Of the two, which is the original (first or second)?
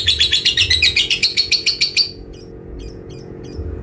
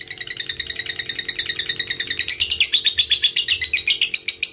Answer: second